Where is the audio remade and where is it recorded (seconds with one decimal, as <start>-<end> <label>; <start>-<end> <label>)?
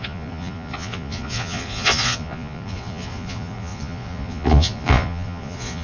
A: 0.0-5.8 remade